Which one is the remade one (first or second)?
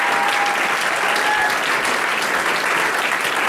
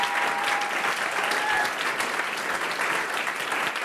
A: second